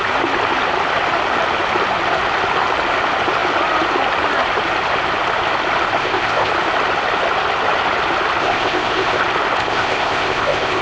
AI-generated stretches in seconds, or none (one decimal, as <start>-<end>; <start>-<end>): 6.0-6.5; 8.4-9.2; 9.6-10.8